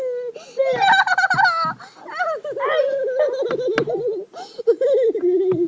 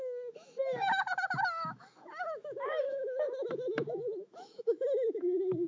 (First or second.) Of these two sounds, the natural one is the first